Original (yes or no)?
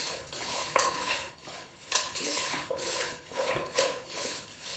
no